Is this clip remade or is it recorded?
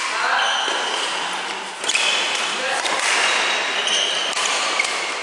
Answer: remade